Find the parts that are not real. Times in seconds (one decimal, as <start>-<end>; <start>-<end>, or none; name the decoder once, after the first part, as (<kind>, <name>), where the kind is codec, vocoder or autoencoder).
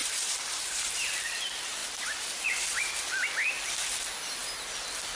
0.0-1.3 (vocoder, BigVGAN v2); 1.8-3.0